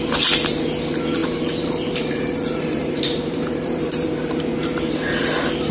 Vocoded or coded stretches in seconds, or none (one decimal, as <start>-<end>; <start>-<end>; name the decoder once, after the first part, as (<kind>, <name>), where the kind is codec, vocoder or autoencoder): 1.2-4.4 (vocoder, BigVGAN v2)